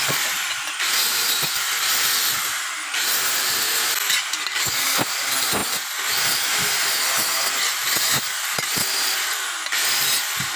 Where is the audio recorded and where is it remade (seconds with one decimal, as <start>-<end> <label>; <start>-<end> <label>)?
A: 0.0-4.5 recorded; 4.5-5.0 remade; 5.0-10.6 recorded